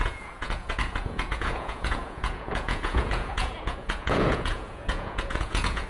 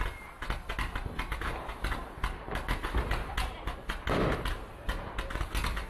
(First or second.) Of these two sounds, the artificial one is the first